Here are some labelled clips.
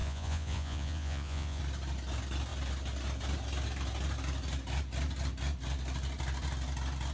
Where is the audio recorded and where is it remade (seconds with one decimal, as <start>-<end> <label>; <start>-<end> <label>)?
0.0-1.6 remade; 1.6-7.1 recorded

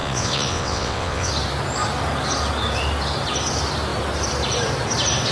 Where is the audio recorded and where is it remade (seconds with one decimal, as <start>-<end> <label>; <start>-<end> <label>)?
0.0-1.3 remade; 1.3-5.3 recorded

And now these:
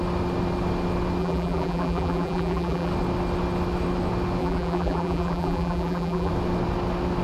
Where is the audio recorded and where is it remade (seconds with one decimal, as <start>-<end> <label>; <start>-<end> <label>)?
0.0-1.2 recorded; 1.2-2.9 remade; 2.9-4.4 recorded; 4.4-6.3 remade; 6.3-7.2 recorded